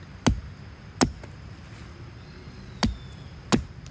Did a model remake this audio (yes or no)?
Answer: no